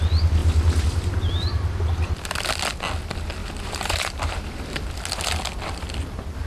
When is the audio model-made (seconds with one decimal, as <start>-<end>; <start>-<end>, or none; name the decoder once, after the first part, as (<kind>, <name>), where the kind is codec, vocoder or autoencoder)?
3.4-4.8 (vocoder, BigVGAN v2)